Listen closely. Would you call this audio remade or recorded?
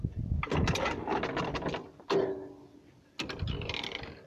recorded